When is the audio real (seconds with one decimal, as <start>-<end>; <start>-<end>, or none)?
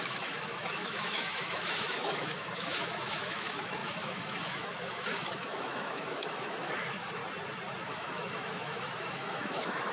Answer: 7.2-7.8